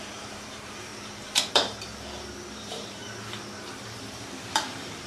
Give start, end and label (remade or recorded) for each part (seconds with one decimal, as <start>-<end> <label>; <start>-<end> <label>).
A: 0.0-0.9 remade; 0.9-1.5 recorded; 1.5-1.9 remade; 1.9-2.5 recorded; 2.5-3.0 remade; 3.0-3.6 recorded; 3.6-5.1 remade